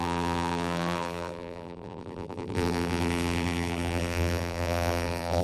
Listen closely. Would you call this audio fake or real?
fake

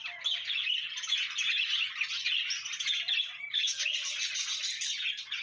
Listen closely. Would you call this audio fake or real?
real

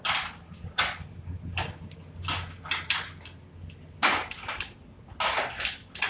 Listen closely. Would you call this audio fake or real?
real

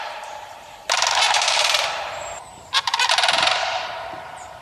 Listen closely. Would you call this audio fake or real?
fake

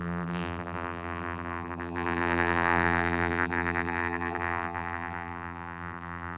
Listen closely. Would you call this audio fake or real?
fake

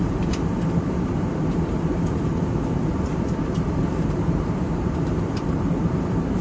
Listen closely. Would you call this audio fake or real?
fake